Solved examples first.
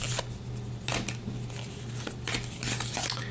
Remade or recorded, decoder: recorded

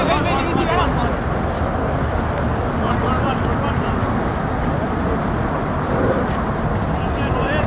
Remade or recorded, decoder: recorded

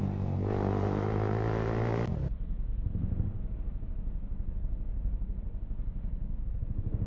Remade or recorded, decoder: recorded